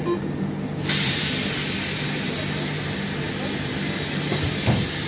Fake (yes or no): no